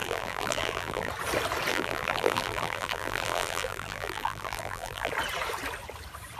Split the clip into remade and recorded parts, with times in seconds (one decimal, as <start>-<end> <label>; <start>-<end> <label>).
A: 0.0-1.1 remade; 1.1-1.7 recorded; 1.7-5.1 remade; 5.1-6.4 recorded